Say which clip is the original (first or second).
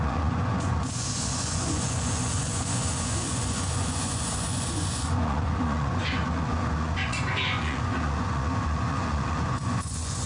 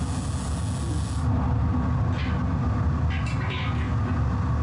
second